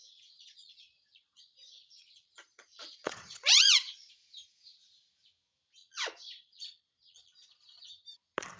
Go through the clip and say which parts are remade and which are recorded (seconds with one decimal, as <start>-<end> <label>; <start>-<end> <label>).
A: 0.0-4.1 remade; 4.1-5.8 recorded; 5.8-7.8 remade; 7.8-8.6 recorded